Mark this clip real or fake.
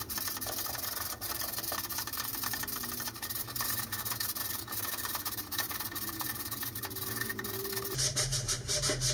fake